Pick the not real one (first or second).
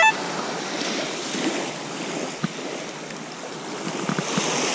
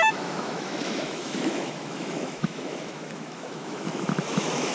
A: second